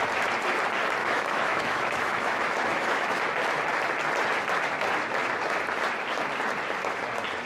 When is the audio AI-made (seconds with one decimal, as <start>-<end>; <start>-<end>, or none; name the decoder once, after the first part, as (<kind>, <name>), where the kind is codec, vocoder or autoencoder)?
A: 1.0-3.2 (autoencoder, DAC-VAE)